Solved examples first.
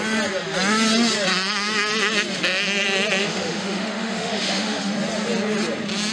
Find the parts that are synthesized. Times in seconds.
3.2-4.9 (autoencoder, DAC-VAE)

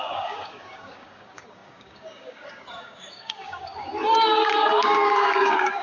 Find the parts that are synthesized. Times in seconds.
0.0-5.8 (codec, DAC)

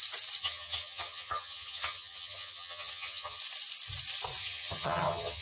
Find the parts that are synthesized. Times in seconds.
0.4-3.4 (vocoder, HiFi-GAN); 4.4-5.4